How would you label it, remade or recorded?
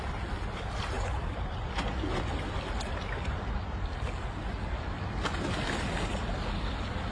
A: recorded